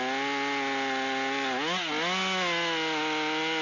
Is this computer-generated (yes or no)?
no